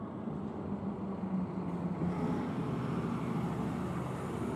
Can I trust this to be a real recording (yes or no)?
yes